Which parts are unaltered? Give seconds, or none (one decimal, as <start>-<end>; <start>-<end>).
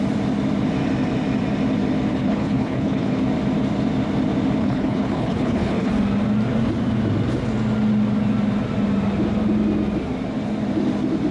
0.0-2.2; 3.2-4.6; 5.9-11.3